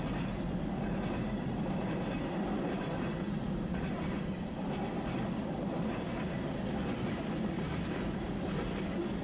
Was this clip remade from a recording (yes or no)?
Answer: no